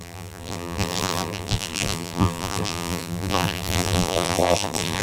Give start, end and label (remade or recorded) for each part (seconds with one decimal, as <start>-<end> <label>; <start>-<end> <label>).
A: 0.0-5.0 remade